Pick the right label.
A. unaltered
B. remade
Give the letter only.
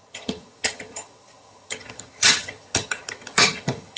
B